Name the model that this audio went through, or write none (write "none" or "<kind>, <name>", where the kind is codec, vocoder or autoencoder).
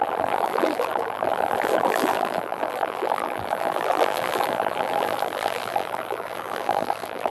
vocoder, BigVGAN v2